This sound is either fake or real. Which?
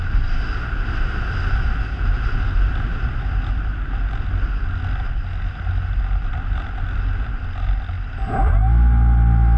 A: real